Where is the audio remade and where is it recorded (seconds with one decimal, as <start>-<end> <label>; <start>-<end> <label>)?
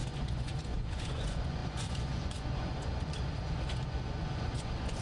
0.0-5.0 remade